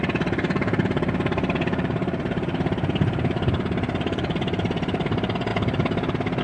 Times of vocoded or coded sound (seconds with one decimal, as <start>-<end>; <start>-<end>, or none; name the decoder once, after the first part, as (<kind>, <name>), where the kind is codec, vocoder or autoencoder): 0.0-6.4 (vocoder, BigVGAN v2)